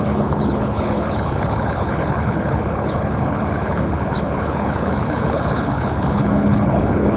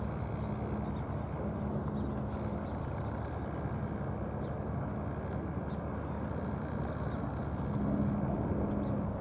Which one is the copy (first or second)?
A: first